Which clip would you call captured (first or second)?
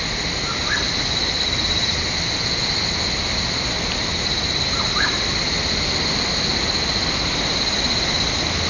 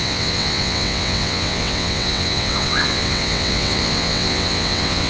first